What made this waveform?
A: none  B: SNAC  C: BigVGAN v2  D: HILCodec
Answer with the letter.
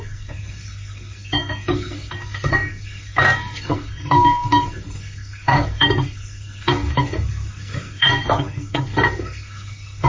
B